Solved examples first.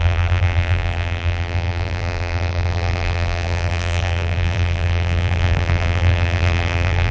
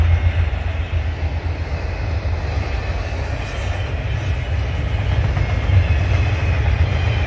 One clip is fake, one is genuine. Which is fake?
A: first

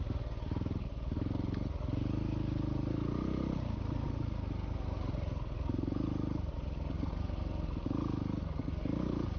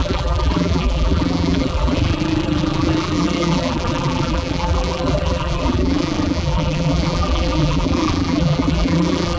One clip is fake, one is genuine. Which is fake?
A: second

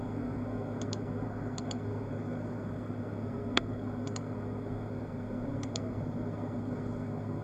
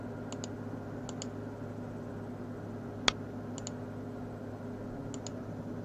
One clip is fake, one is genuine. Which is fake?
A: first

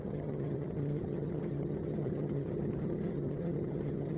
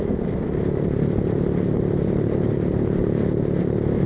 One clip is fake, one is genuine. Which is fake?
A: first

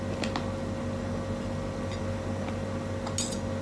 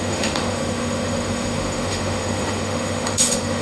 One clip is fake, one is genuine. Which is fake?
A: second